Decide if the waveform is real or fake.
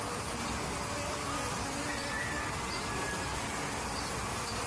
real